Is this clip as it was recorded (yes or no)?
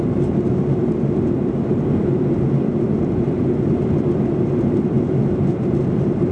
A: yes